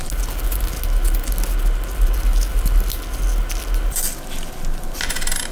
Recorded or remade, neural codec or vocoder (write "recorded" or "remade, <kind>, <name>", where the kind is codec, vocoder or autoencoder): recorded